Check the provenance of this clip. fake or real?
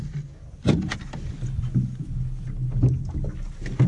real